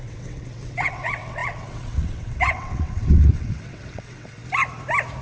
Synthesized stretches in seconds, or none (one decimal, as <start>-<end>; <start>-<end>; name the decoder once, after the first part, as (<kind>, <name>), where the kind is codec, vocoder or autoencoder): 0.0-4.4 (vocoder, WaveNeXt)